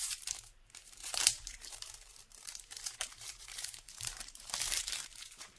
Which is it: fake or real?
fake